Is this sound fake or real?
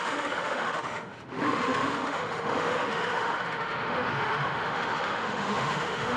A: fake